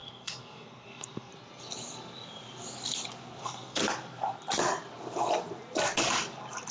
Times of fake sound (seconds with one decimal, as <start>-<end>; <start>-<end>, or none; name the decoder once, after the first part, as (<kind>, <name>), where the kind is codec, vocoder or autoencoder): 0.0-1.3 (codec, SNAC); 3.4-3.8

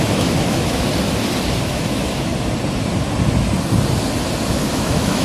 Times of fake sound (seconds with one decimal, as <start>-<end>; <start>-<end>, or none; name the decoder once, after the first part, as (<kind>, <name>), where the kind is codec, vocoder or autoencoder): 0.0-0.9 (autoencoder, DAC-VAE); 1.6-2.3; 4.7-5.2

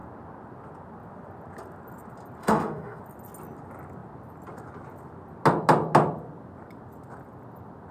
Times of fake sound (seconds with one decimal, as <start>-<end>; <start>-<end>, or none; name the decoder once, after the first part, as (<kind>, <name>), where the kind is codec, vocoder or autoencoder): 2.4-3.0 (autoencoder, DAC-VAE)

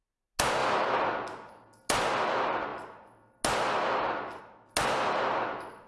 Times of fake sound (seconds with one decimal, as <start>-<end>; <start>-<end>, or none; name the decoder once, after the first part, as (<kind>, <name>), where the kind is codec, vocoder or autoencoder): none

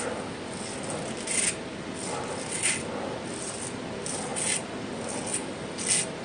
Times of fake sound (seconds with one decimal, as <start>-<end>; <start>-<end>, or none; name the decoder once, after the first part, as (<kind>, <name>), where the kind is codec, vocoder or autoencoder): none